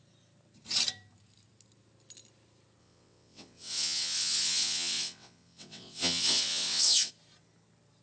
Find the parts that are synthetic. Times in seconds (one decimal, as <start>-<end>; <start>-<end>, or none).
2.8-7.1